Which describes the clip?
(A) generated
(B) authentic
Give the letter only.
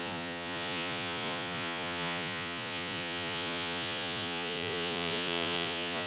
A